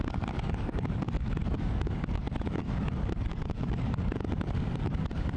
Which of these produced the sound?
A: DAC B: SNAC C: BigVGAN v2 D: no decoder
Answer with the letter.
A